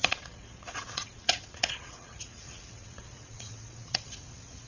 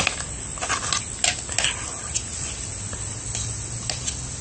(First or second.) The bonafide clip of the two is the second